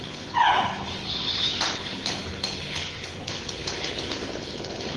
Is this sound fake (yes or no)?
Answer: yes